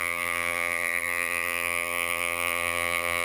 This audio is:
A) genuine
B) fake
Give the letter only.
B